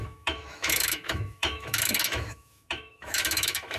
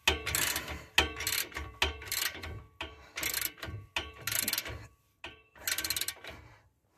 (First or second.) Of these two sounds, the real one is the second